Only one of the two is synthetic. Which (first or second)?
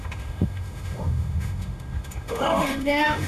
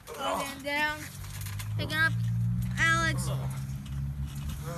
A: first